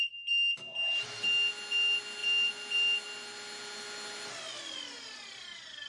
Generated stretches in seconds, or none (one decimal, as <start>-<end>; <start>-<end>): none

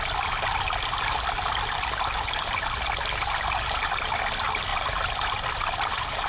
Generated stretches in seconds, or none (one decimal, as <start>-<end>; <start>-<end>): none

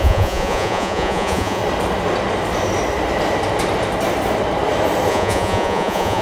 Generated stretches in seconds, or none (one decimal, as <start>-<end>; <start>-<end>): 0.0-1.6; 5.1-6.2

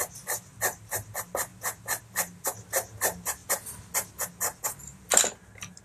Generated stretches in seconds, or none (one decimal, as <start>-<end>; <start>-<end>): none